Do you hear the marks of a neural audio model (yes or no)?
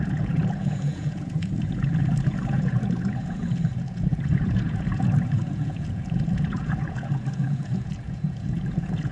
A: yes